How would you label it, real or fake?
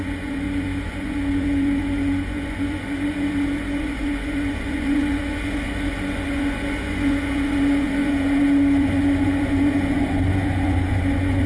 fake